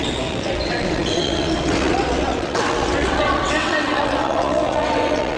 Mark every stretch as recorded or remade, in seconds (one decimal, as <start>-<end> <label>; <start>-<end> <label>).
0.0-5.4 remade